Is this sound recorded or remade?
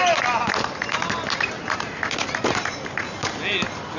recorded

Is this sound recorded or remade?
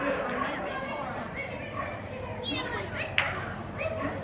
recorded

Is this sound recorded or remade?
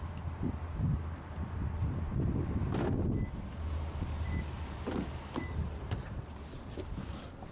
recorded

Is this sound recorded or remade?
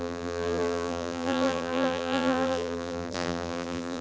remade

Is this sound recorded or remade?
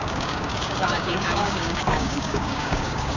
remade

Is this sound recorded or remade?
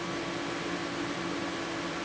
recorded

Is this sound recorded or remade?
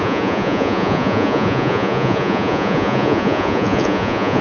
remade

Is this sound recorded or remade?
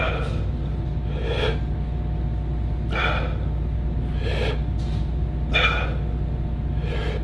recorded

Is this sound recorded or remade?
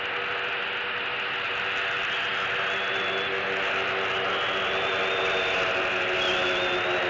recorded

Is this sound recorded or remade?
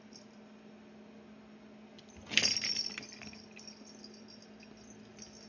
recorded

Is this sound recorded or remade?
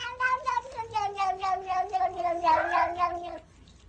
recorded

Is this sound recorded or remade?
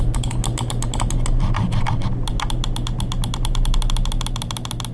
recorded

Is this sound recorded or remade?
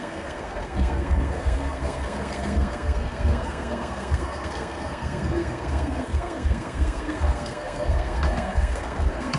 remade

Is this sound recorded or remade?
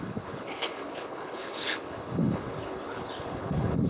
remade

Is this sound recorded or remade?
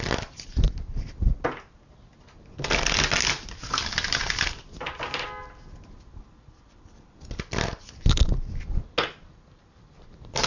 recorded